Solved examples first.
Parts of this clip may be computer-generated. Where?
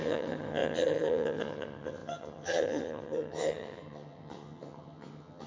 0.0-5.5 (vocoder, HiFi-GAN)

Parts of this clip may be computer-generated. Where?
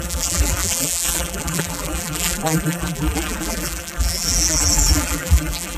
0.0-5.8 (vocoder, BigVGAN v2)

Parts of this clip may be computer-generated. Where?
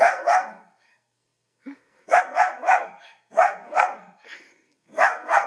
0.0-5.5 (codec, SNAC)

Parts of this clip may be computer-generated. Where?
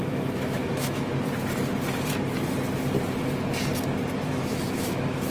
0.0-1.1 (autoencoder, DAC-VAE); 4.3-5.3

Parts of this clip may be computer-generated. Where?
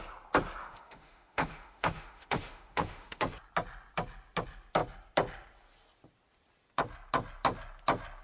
0.6-3.2 (autoencoder, DAC-VAE)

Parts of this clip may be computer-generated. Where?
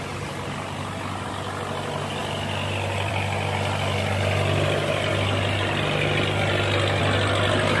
none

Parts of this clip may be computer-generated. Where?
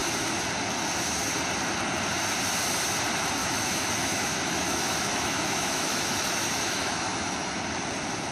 3.4-7.6 (autoencoder, DAC-VAE)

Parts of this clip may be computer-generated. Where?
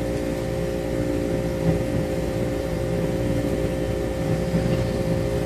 1.7-5.0 (vocoder, BigVGAN v2)